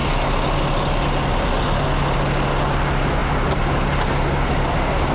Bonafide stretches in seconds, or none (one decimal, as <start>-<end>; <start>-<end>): 0.0-5.1